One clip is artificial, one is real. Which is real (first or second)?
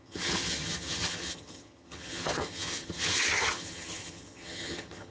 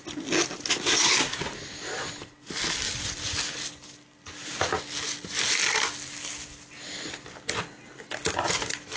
second